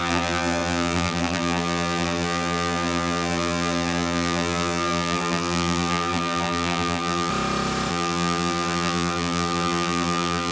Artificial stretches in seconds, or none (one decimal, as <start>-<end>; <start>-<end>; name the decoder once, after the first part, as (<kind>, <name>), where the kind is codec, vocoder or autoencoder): 0.0-7.3 (vocoder, BigVGAN v2); 7.9-10.5